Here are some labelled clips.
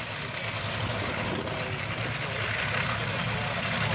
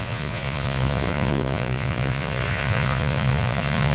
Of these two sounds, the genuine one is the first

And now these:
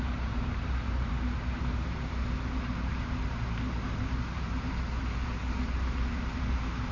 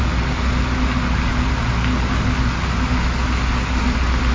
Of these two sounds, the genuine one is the second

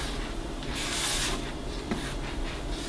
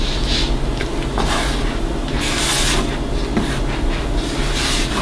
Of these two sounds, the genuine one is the second